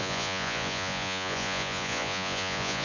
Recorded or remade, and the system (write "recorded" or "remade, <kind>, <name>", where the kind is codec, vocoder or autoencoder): remade, vocoder, Vocos